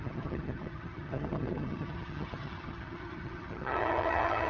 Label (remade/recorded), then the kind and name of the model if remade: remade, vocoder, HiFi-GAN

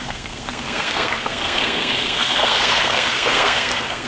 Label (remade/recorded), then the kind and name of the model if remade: remade, codec, SNAC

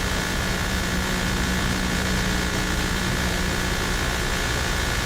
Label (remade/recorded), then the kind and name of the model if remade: remade, vocoder, Vocos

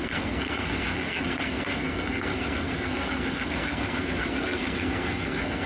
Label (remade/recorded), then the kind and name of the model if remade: remade, codec, SNAC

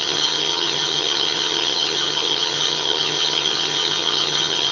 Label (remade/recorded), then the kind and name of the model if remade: remade, vocoder, HiFi-GAN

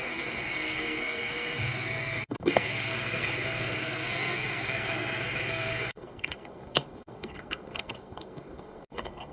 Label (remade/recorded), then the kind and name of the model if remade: remade, codec, SNAC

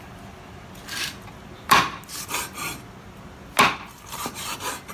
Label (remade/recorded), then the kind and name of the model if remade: recorded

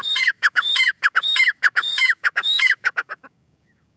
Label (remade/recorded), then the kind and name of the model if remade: remade, codec, DAC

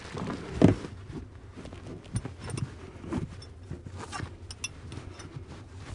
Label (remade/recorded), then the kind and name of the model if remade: recorded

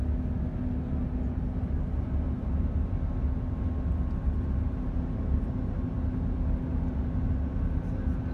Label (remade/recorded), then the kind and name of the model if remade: recorded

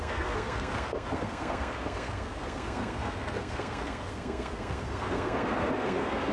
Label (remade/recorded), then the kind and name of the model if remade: remade, codec, SNAC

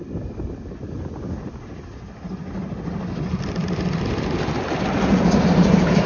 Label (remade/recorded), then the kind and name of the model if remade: recorded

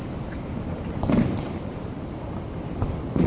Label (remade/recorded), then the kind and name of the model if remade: recorded